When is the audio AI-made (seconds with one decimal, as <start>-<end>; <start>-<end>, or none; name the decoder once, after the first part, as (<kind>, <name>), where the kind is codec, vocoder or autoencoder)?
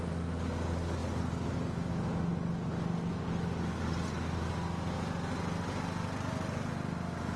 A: none